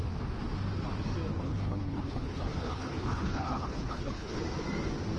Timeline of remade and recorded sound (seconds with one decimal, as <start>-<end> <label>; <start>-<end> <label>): 0.0-1.3 recorded; 1.3-4.4 remade; 4.4-5.2 recorded